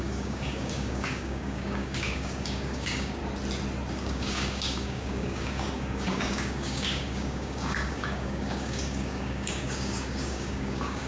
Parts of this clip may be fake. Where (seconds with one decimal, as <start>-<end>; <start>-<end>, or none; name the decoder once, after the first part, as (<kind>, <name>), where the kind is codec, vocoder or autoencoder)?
0.0-3.2 (codec, DAC); 3.9-11.1